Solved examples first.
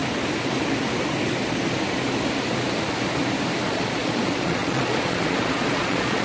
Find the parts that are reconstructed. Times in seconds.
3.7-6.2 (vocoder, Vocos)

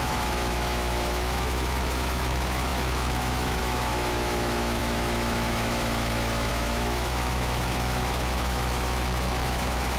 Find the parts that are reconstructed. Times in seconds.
0.0-10.0 (autoencoder, DAC-VAE)